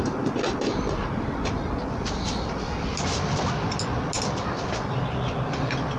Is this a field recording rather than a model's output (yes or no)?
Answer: yes